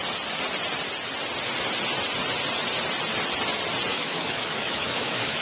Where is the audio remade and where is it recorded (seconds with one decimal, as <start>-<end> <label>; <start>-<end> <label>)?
0.0-3.9 recorded; 3.9-5.4 remade